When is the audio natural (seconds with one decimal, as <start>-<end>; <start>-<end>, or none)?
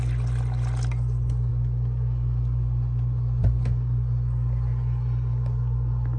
0.0-6.2